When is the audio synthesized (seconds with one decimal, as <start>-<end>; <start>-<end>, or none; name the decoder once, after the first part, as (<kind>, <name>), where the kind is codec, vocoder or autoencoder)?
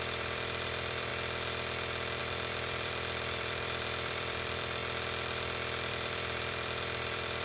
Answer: 0.0-1.1 (vocoder, BigVGAN v2); 2.2-4.8; 5.9-7.4